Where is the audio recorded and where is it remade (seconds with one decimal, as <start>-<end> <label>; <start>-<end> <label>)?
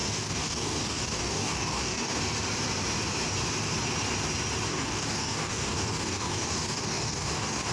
0.0-2.2 remade; 2.2-4.7 recorded; 4.7-7.7 remade